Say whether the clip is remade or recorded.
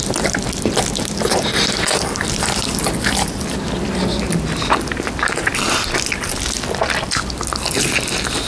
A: recorded